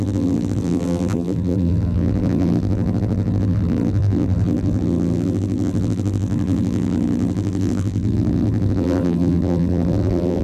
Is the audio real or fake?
fake